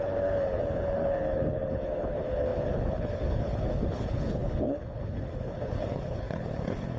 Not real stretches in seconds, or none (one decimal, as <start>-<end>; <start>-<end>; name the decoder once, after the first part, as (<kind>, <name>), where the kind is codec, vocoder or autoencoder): 0.0-7.0 (codec, HILCodec)